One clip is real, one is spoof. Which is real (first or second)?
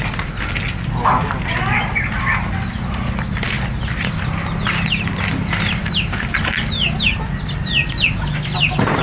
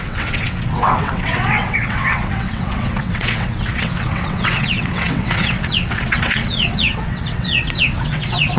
first